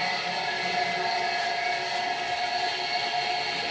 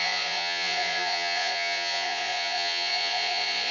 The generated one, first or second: second